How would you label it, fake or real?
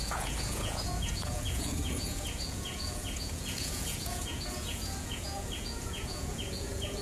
fake